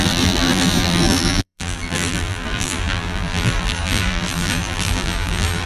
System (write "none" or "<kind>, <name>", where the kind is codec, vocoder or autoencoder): vocoder, BigVGAN v2